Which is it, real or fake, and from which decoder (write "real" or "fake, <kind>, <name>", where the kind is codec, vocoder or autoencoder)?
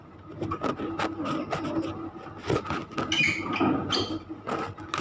real